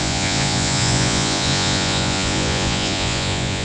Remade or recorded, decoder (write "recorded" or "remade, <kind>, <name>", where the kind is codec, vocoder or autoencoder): remade, vocoder, Vocos